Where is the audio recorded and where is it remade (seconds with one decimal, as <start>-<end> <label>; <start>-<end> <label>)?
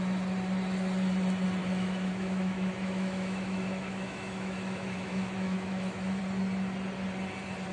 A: 0.0-1.6 recorded; 1.6-6.2 remade; 6.2-7.7 recorded